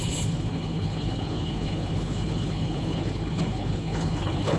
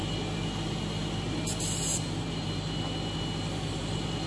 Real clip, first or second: second